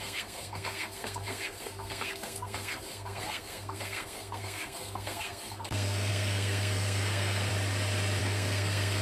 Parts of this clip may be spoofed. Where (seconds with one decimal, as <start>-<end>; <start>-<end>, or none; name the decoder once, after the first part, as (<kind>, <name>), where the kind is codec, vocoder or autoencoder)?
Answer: 0.0-7.5 (codec, SNAC); 8.2-9.0